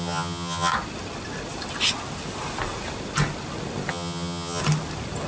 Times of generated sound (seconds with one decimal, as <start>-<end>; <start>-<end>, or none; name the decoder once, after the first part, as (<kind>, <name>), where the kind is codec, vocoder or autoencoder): 0.0-0.7 (vocoder, HiFi-GAN); 3.9-4.6